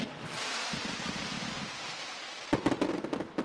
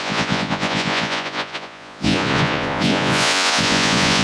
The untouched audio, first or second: first